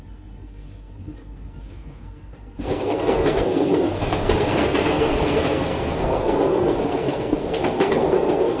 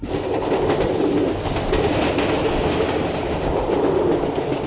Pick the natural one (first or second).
second